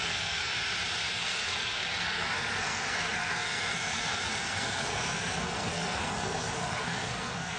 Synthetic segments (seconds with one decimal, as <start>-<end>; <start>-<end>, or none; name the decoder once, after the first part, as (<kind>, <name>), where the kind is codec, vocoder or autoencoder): 0.0-0.5 (codec, SNAC); 1.1-7.6